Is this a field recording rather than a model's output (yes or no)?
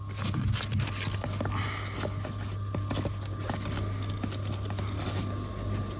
yes